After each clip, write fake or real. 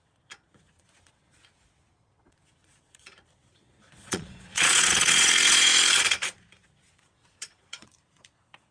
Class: fake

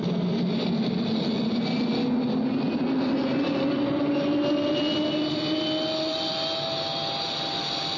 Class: real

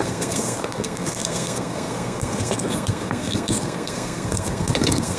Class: fake